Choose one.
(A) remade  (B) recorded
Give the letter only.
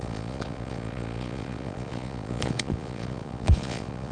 A